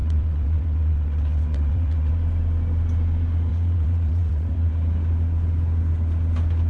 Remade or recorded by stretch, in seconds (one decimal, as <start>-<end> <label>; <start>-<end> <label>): 0.0-2.1 remade; 2.1-3.5 recorded; 3.5-4.7 remade; 4.7-6.7 recorded